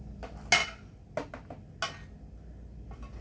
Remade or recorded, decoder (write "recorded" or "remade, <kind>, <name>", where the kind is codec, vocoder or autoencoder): recorded